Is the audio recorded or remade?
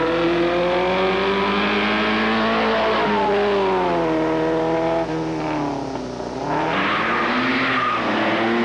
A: recorded